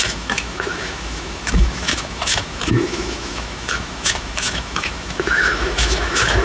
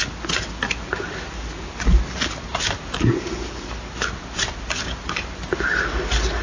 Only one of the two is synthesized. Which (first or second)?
first